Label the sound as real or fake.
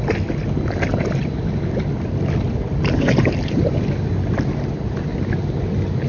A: real